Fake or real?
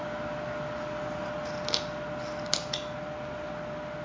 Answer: real